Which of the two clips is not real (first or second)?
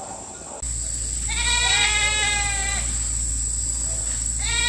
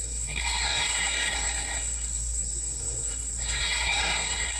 second